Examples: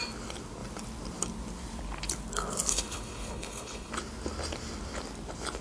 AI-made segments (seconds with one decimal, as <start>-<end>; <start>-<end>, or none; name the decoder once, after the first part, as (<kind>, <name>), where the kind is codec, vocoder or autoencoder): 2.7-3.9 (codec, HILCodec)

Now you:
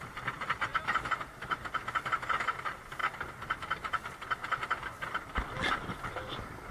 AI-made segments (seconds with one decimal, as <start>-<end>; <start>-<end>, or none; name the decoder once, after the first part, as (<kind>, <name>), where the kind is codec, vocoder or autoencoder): 0.0-0.7 (vocoder, BigVGAN v2); 2.6-3.0

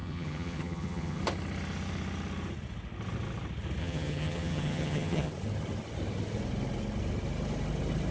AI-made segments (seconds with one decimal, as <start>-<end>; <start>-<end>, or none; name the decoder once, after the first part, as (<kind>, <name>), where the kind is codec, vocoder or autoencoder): 0.0-1.2 (vocoder, HiFi-GAN); 3.8-5.3

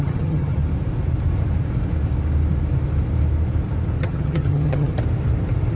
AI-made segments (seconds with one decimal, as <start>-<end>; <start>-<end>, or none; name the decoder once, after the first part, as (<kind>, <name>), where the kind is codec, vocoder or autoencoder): 0.0-0.6 (vocoder, HiFi-GAN); 4.0-4.9